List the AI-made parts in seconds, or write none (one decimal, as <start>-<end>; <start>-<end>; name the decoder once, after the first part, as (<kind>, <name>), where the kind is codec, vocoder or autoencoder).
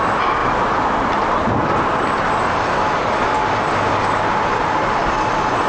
none